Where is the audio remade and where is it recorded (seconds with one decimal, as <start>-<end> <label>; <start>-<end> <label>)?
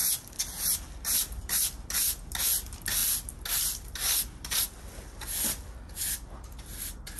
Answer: 0.0-7.2 recorded